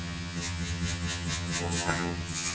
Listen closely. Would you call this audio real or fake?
fake